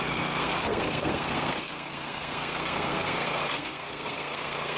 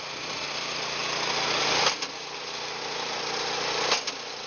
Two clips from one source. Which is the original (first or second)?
second